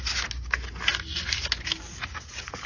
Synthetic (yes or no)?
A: no